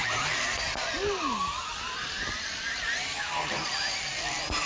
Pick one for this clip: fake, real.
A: real